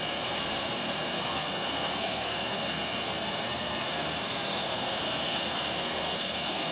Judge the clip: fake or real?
fake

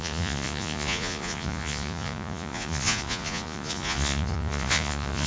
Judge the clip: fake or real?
fake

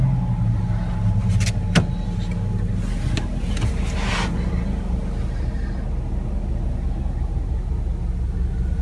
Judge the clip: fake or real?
real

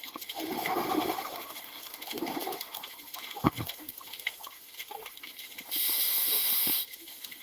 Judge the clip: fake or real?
fake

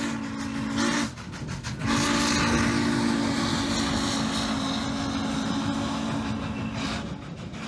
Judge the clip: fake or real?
real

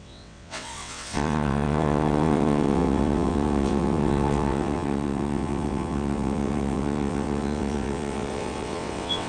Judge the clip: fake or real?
fake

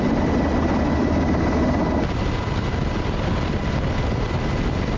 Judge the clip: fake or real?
real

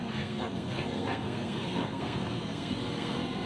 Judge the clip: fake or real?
fake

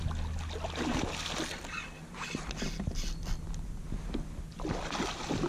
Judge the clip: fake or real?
real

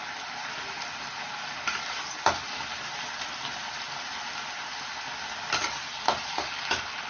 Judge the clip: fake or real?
real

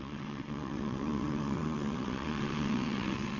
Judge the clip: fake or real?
fake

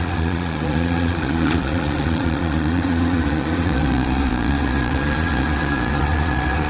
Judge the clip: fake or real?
fake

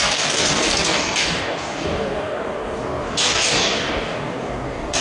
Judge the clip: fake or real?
fake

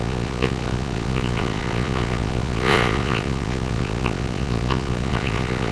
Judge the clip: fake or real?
fake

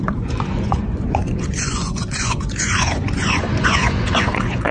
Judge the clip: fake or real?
fake